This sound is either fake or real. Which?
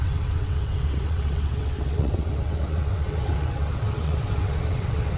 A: fake